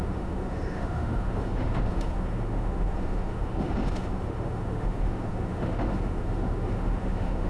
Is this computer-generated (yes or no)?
yes